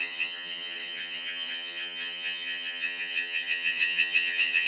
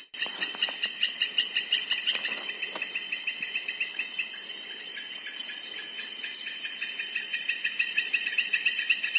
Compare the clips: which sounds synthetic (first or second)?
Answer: first